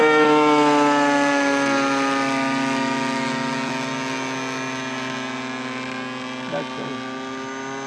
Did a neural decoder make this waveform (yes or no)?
no